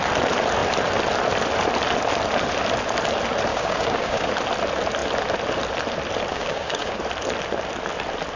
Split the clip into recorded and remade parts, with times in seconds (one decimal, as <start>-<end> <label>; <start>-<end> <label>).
0.0-3.5 recorded; 3.5-4.3 remade; 4.3-6.3 recorded; 6.3-7.0 remade; 7.0-8.4 recorded

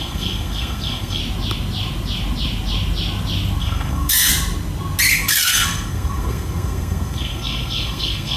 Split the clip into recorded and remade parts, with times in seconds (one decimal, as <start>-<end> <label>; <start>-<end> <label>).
0.0-1.2 remade; 1.2-3.6 recorded; 3.6-4.3 remade; 4.3-5.1 recorded; 5.1-8.4 remade

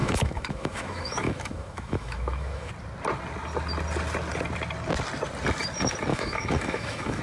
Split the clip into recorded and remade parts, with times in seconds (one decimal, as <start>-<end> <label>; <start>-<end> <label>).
0.0-2.7 remade; 2.7-6.1 recorded; 6.1-7.2 remade